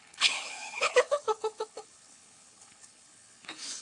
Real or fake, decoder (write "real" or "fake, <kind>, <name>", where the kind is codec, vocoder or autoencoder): fake, codec, HILCodec